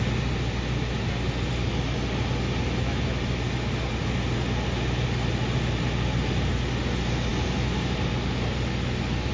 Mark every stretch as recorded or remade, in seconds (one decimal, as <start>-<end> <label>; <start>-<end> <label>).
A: 0.0-9.3 recorded